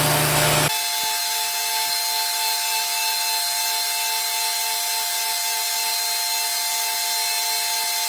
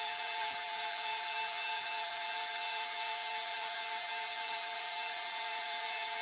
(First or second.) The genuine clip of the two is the first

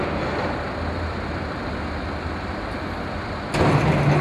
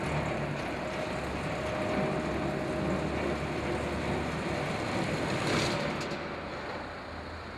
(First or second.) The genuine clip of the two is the second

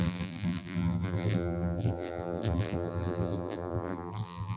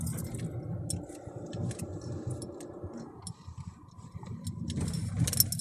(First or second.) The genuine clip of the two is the second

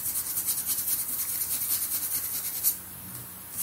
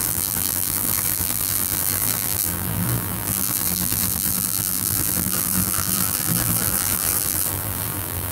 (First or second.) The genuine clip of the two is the first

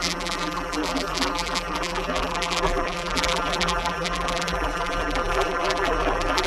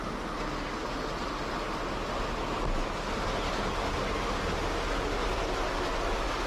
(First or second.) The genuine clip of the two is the second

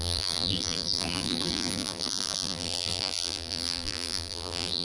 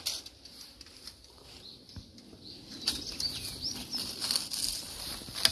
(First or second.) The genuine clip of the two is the second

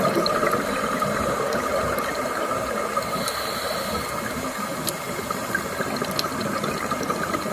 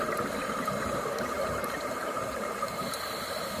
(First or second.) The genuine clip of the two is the first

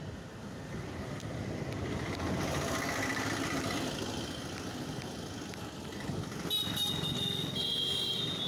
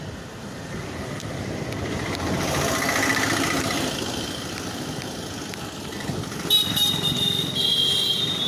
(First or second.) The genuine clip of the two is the first